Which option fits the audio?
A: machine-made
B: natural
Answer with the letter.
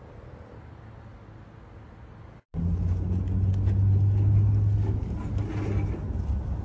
B